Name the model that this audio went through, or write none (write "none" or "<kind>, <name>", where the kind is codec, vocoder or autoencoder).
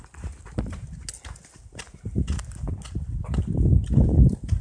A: none